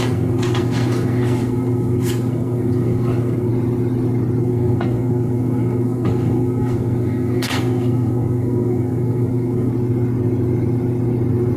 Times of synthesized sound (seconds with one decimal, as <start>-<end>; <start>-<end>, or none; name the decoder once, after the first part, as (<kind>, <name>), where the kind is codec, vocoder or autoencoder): 0.0-3.5 (codec, SNAC); 4.4-9.7